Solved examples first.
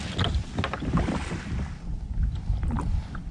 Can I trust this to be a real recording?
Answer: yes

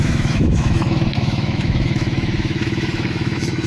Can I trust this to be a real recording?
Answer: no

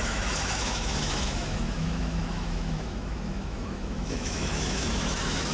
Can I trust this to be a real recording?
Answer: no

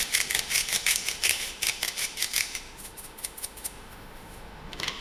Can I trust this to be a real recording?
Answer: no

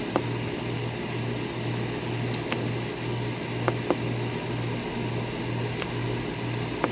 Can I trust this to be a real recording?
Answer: yes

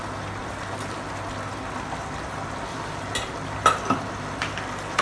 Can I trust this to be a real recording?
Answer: yes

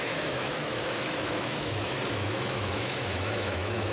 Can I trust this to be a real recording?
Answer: no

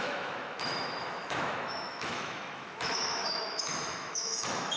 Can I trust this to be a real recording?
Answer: no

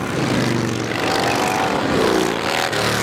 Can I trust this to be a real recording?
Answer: yes